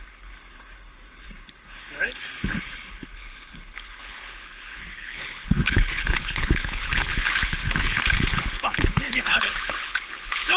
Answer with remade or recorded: remade